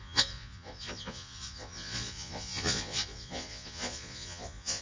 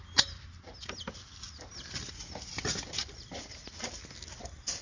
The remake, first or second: first